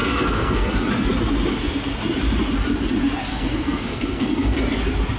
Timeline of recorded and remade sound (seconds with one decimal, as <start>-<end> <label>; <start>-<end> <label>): 0.0-0.9 remade; 0.9-3.3 recorded; 3.3-4.6 remade; 4.6-5.2 recorded